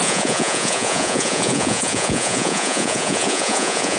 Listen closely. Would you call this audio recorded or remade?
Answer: remade